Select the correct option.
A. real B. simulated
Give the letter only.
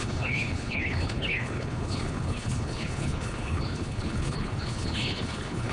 B